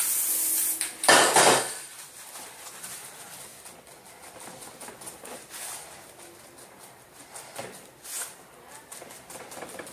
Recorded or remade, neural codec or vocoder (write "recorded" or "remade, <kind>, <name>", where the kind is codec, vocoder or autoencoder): recorded